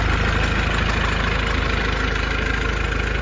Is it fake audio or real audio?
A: real